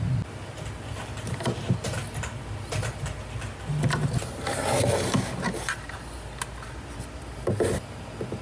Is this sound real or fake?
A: real